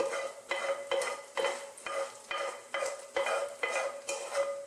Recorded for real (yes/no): yes